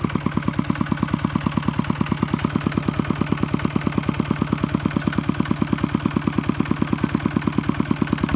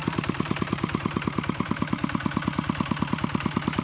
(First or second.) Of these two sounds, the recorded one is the first